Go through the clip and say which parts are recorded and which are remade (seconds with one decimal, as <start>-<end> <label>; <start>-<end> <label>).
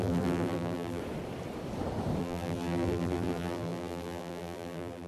0.0-1.0 remade; 1.0-2.2 recorded; 2.2-5.1 remade